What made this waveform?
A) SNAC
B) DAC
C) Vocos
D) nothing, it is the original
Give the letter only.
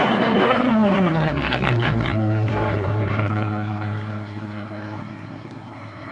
A